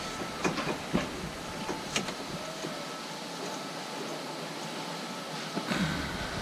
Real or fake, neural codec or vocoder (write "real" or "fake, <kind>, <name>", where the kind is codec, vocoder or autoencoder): real